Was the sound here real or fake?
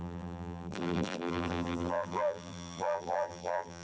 fake